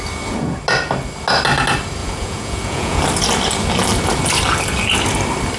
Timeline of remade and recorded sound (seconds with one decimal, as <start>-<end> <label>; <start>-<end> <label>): 0.0-2.0 recorded; 2.0-3.0 remade; 3.0-5.6 recorded